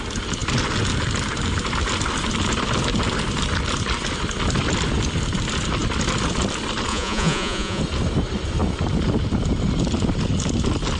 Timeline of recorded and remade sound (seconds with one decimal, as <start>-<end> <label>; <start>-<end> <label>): 0.0-6.9 recorded; 6.9-7.8 remade; 7.8-11.0 recorded